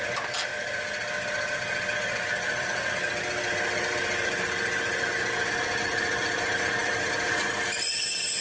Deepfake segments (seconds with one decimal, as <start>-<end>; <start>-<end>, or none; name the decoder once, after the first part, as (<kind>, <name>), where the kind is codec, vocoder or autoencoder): none